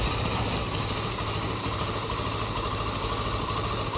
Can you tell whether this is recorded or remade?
recorded